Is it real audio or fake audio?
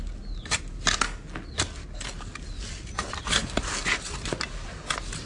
real